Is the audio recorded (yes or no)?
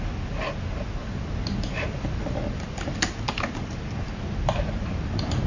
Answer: yes